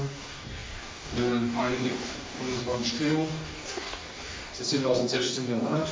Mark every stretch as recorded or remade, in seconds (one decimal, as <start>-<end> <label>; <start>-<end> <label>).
0.0-5.9 remade